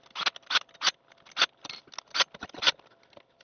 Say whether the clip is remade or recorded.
recorded